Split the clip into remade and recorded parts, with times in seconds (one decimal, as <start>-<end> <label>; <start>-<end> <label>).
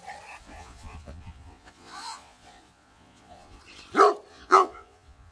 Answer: 0.0-0.4 recorded; 0.4-3.6 remade; 3.6-4.3 recorded; 4.3-5.3 remade